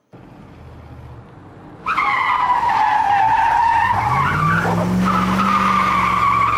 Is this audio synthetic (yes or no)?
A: no